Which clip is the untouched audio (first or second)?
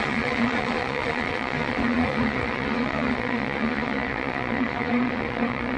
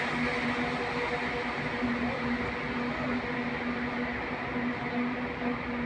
second